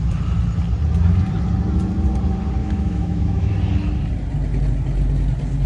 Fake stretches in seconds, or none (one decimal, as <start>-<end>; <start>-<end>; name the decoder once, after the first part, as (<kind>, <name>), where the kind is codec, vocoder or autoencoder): 2.6-3.5 (autoencoder, DAC-VAE)